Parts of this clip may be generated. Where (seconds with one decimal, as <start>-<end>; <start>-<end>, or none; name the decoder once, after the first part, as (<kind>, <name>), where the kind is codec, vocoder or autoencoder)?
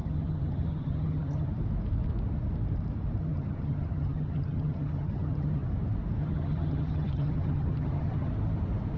0.0-1.5 (vocoder, HiFi-GAN); 3.2-5.7; 6.2-8.3